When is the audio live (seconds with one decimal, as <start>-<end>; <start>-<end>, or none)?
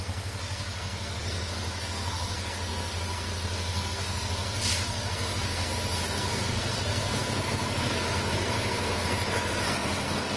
none